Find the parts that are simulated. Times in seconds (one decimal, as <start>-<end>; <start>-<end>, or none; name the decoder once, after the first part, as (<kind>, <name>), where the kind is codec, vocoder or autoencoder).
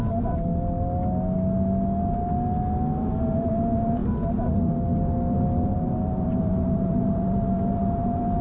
0.0-0.5 (vocoder, BigVGAN v2); 3.0-4.0; 5.7-8.4